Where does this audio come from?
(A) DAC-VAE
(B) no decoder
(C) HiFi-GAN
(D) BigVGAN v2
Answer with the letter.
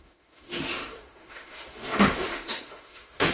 A